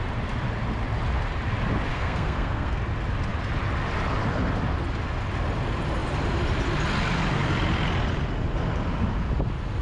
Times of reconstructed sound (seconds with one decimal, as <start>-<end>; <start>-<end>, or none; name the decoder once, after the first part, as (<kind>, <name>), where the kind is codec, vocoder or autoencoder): 1.9-2.8 (codec, SNAC)